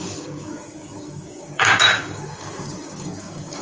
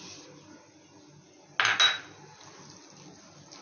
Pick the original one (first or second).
second